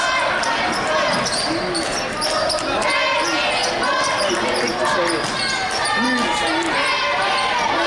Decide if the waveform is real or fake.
real